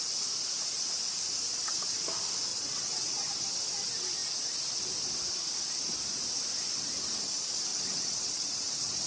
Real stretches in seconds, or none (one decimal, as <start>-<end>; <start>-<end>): 0.0-2.5; 3.3-7.7